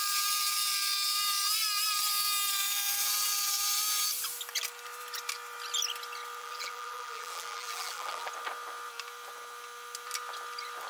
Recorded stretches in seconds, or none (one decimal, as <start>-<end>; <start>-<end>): 0.0-6.4; 8.3-10.9